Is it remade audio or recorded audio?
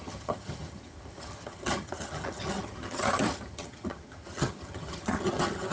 remade